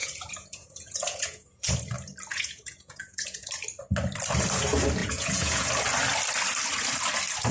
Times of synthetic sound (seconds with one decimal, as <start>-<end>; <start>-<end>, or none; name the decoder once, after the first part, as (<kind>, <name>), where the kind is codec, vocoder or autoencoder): 0.0-1.7 (vocoder, Vocos); 2.3-3.5; 5.0-5.7